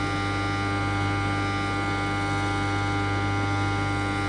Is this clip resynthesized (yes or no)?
no